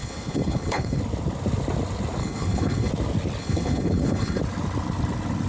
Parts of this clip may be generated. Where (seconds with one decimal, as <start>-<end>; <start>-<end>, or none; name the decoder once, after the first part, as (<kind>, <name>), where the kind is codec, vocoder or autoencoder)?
0.0-1.0 (codec, HILCodec); 2.2-2.9; 3.4-4.4

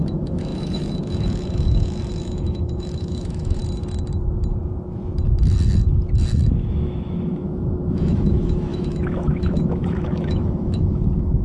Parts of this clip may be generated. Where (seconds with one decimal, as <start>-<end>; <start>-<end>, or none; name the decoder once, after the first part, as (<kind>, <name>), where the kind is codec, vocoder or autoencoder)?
0.0-3.6 (autoencoder, DAC-VAE); 6.7-11.4

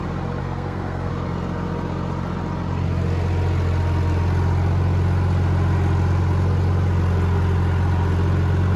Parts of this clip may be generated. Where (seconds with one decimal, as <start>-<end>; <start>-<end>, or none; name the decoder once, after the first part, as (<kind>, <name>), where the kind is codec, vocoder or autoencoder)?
0.4-1.1 (codec, SNAC)